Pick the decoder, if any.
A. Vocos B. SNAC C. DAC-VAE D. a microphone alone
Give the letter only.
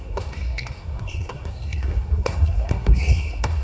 B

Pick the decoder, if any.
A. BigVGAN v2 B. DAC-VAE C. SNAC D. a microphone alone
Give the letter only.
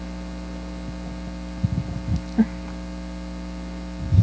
D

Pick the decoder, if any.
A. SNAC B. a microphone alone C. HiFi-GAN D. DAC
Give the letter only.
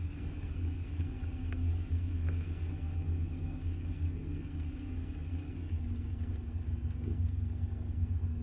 A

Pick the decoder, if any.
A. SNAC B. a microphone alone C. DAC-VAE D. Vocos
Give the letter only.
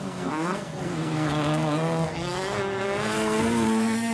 A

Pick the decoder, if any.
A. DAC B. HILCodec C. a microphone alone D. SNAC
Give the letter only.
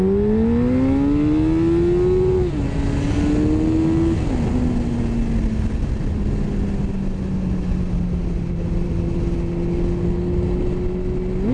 C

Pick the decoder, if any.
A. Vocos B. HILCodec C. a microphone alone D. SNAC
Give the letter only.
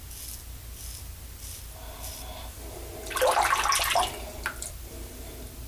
C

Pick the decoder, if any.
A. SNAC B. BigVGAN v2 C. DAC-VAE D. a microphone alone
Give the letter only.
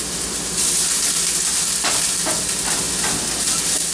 D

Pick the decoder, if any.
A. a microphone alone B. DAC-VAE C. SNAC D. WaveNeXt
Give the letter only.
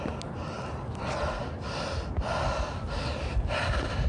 A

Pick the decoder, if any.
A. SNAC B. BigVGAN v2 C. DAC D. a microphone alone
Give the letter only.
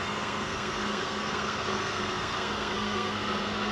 A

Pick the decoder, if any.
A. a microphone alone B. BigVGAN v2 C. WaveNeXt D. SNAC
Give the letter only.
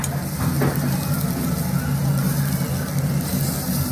A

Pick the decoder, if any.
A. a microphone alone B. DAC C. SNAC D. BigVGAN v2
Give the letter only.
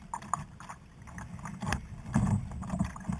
A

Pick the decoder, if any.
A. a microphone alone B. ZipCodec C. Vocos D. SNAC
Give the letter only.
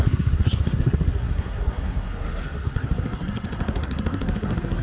D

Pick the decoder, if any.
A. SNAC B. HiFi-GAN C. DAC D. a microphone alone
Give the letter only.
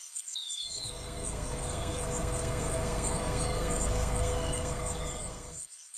A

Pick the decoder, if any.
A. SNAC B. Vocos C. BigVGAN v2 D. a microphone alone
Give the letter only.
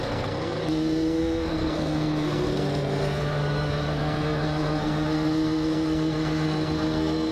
A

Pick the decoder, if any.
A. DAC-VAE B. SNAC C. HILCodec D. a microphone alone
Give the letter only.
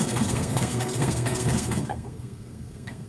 B